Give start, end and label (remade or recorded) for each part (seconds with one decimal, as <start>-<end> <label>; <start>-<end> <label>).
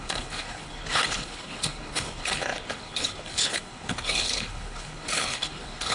0.0-5.9 remade